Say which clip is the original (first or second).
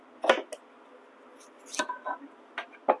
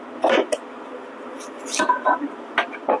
first